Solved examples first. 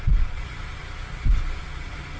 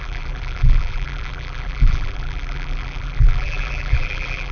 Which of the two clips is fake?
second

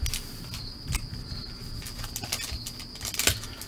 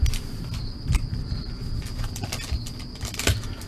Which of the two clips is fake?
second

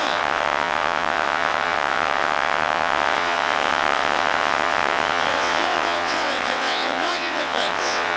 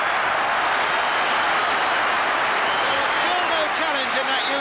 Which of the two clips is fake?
first